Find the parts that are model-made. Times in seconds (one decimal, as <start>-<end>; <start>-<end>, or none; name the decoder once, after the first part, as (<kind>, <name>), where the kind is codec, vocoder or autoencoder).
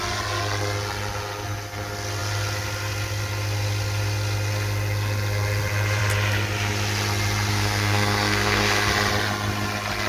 7.5-8.9 (codec, SNAC)